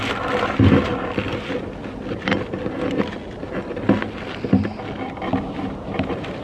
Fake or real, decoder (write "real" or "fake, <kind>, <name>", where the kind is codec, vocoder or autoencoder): real